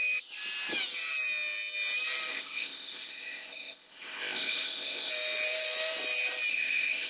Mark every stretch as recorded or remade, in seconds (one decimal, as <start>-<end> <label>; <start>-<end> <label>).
0.0-2.3 recorded; 2.3-5.1 remade; 5.1-6.5 recorded; 6.5-7.1 remade